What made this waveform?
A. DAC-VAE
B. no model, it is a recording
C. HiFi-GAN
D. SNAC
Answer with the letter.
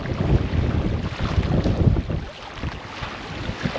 B